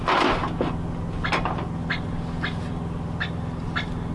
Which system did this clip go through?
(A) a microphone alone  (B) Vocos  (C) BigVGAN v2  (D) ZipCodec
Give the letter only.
A